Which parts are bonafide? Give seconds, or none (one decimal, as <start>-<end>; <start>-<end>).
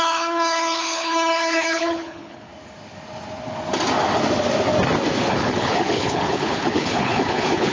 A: 2.5-5.3